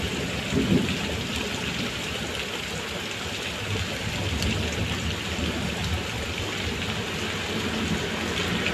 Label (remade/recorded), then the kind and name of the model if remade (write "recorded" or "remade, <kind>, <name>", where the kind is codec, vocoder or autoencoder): recorded